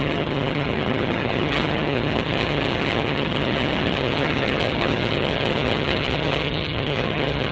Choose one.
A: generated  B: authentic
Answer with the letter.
A